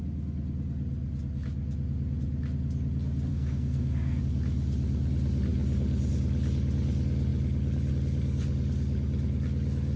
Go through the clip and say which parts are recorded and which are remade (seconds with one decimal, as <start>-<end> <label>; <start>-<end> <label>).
0.0-3.3 recorded; 3.3-4.2 remade; 4.2-10.0 recorded